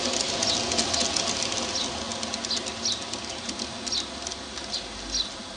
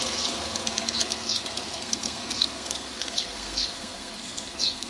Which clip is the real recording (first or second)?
first